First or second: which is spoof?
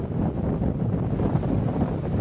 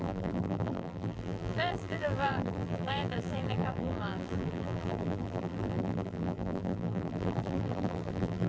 second